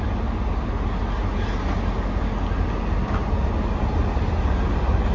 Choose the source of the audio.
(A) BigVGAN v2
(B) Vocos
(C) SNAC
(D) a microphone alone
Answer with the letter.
D